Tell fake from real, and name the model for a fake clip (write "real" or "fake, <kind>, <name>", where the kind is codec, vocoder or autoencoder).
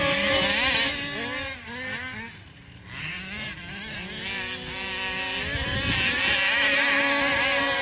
real